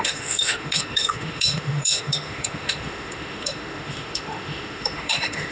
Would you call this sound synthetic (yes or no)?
yes